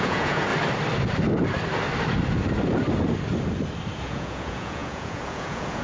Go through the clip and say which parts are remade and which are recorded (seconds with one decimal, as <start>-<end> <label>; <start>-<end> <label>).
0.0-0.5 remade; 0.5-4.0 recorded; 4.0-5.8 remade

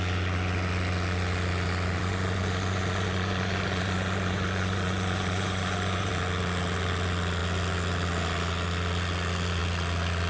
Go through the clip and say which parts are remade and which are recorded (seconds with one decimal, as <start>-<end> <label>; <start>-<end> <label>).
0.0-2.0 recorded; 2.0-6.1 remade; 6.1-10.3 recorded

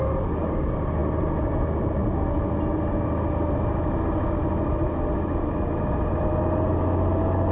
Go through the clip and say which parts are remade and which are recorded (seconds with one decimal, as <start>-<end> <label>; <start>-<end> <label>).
0.0-7.5 recorded

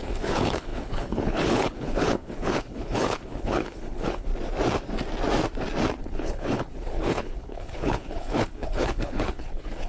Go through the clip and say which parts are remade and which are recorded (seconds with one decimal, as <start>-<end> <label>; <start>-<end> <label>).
0.0-4.3 remade; 4.3-6.0 recorded; 6.0-9.9 remade